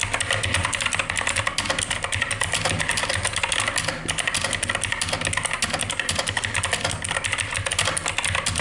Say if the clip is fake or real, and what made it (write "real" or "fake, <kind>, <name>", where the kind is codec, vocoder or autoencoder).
real